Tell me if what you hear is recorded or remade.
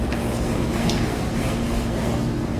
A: remade